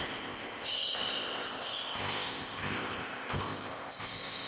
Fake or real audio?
fake